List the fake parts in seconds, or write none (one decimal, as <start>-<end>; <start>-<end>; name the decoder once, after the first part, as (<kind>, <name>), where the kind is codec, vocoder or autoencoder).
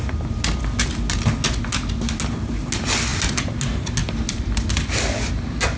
3.1-3.6 (vocoder, BigVGAN v2); 4.0-5.3